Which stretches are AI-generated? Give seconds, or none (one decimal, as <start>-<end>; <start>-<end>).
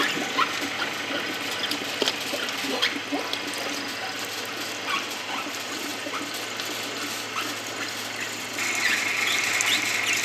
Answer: none